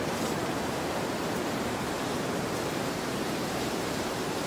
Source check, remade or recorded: remade